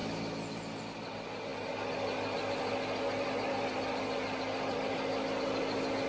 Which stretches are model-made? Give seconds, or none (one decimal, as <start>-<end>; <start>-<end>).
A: 0.0-0.8